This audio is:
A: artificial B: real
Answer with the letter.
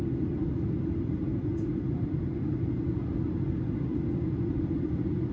B